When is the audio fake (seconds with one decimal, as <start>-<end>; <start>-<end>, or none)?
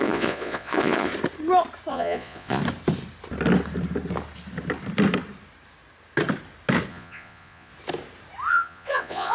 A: 0.0-1.1; 1.9-2.6; 6.9-7.7; 8.5-9.3